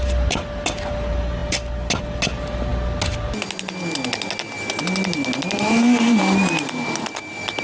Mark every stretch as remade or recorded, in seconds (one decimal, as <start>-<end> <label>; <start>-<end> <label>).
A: 0.0-7.6 recorded

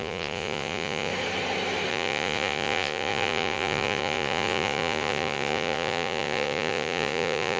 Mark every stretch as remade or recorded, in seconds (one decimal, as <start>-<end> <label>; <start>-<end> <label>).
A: 0.0-1.1 remade; 1.1-1.9 recorded; 1.9-7.6 remade

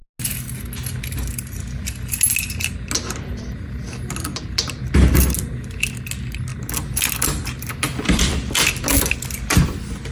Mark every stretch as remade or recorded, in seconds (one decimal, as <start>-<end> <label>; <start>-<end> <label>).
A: 0.0-10.1 recorded

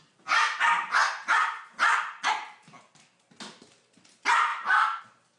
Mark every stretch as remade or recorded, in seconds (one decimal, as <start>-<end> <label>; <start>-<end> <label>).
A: 0.0-5.4 recorded

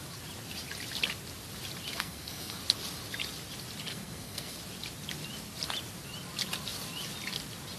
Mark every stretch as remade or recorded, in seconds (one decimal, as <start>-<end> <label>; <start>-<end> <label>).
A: 0.0-1.9 recorded; 1.9-2.6 remade; 2.6-3.9 recorded; 3.9-4.6 remade; 4.6-7.8 recorded

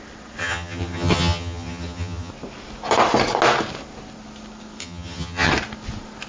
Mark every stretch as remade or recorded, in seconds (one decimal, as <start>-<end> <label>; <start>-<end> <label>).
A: 0.0-0.4 recorded; 0.4-2.3 remade; 2.3-4.8 recorded; 4.8-5.5 remade; 5.5-6.3 recorded

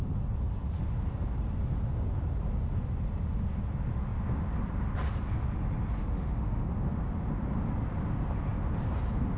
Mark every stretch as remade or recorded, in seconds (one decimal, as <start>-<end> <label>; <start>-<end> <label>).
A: 0.0-6.0 recorded; 6.0-6.7 remade; 6.7-9.4 recorded

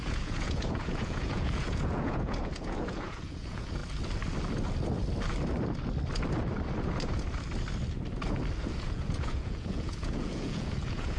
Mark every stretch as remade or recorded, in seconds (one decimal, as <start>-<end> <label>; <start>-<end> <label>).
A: 0.0-3.8 remade; 3.8-8.7 recorded; 8.7-11.2 remade